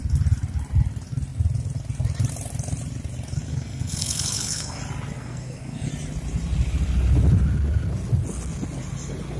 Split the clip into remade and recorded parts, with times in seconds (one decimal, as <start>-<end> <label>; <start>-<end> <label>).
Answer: 0.0-3.5 recorded; 3.5-4.8 remade; 4.8-5.2 recorded; 5.2-5.9 remade; 5.9-9.4 recorded